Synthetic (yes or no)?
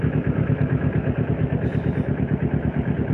no